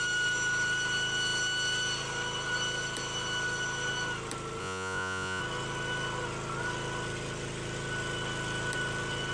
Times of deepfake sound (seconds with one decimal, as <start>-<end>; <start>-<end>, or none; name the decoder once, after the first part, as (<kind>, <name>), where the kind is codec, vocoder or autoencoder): 4.6-5.4 (vocoder, Vocos)